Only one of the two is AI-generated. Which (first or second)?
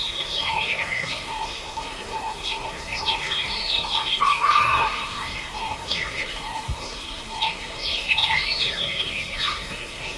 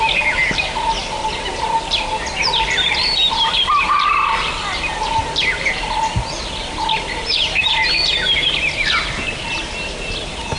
first